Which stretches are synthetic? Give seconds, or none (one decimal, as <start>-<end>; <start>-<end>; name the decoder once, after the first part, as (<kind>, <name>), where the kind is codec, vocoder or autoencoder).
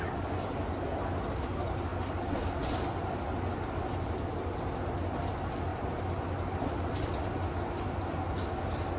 none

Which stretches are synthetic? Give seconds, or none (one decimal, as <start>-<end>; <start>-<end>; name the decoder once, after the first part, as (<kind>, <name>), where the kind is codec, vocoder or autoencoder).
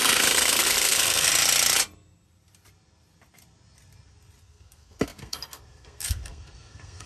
0.0-1.3 (codec, SNAC); 4.4-7.1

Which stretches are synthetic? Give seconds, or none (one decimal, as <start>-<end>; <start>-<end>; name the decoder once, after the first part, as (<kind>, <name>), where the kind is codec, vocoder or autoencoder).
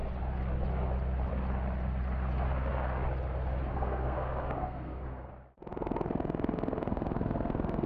3.7-5.3 (codec, SNAC); 5.7-7.9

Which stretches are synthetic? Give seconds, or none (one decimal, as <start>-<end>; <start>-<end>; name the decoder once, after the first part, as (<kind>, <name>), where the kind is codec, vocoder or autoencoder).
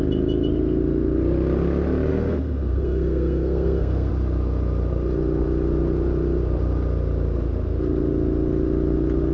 2.1-4.1 (codec, SNAC)